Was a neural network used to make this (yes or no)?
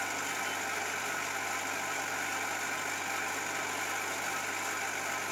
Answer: no